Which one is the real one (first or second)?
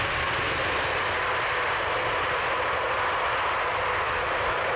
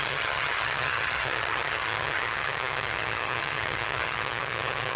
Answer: first